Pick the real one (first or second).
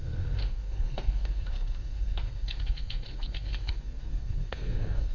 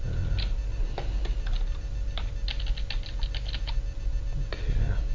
second